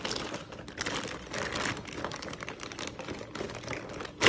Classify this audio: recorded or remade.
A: recorded